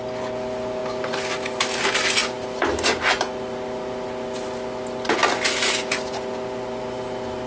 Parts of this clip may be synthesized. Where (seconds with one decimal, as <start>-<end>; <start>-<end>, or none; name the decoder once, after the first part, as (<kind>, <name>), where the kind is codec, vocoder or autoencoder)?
2.2-3.0 (vocoder, BigVGAN v2)